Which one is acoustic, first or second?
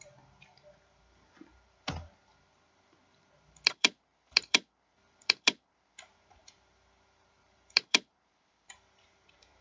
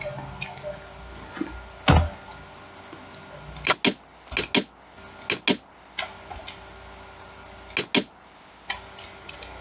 second